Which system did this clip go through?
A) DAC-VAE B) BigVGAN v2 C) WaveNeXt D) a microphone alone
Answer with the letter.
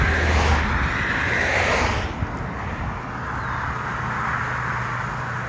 D